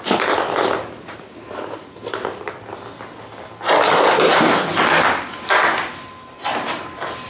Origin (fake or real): real